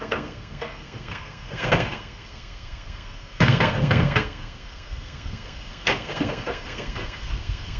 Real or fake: fake